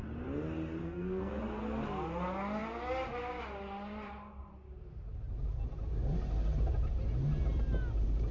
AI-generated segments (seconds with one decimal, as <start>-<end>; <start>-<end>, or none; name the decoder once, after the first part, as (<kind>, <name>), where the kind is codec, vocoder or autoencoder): 0.8-1.4 (codec, SNAC)